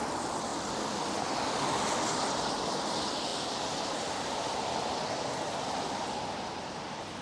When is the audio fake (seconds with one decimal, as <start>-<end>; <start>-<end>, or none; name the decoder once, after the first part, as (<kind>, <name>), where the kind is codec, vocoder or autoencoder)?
none